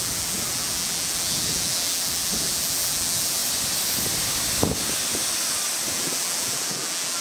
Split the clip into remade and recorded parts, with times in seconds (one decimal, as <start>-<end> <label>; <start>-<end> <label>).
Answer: 0.0-3.4 remade; 3.4-5.9 recorded; 5.9-7.2 remade